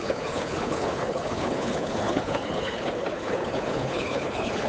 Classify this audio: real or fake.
fake